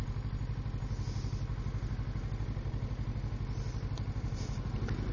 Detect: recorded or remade recorded